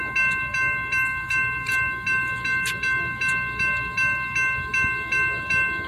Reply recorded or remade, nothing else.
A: recorded